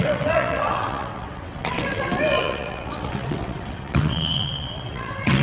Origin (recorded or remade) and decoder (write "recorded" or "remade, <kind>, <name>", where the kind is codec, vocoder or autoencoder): remade, vocoder, WaveNeXt